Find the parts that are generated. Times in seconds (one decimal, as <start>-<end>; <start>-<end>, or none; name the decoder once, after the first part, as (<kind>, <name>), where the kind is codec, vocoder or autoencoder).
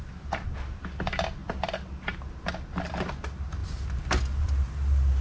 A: none